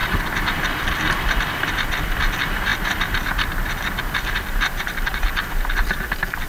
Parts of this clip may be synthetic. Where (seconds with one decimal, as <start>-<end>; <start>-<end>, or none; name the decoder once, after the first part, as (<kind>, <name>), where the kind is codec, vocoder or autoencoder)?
0.0-2.7 (vocoder, BigVGAN v2)